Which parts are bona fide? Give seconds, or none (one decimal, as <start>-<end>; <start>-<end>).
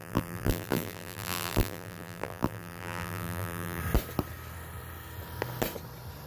3.8-6.3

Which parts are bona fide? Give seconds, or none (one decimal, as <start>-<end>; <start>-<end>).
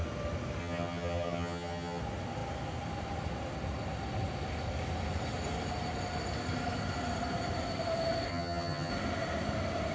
0.0-0.6; 2.0-8.3; 8.9-9.9